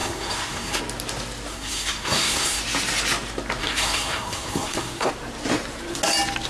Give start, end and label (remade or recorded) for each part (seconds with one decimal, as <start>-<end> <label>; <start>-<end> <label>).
0.0-0.8 remade; 0.8-1.5 recorded; 1.5-2.6 remade; 2.6-3.6 recorded; 3.6-5.1 remade; 5.1-6.5 recorded

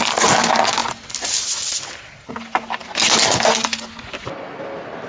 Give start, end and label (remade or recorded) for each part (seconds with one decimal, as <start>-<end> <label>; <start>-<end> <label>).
0.0-5.1 recorded

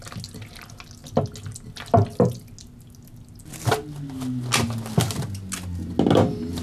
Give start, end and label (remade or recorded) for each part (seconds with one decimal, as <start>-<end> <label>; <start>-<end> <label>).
0.0-6.6 recorded

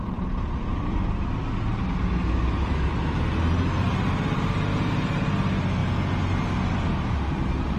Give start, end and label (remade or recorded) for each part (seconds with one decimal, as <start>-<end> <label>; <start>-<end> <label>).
0.0-0.7 recorded; 0.7-3.3 remade; 3.3-3.9 recorded; 3.9-5.2 remade; 5.2-7.8 recorded

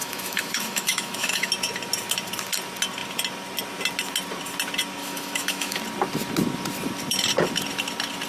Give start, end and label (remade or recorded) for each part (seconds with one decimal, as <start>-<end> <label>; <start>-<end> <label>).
0.0-1.5 remade; 1.5-5.0 recorded; 5.0-5.8 remade; 5.8-8.3 recorded

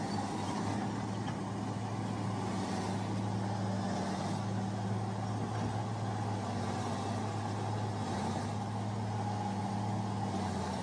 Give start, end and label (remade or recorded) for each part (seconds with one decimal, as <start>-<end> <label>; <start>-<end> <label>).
0.0-10.8 recorded

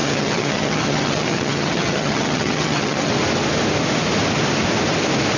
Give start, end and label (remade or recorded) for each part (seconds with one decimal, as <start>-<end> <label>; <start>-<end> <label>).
0.0-3.1 remade; 3.1-5.4 recorded